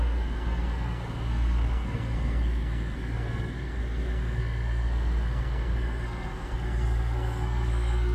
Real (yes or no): no